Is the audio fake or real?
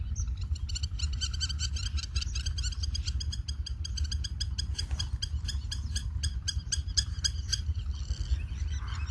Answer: real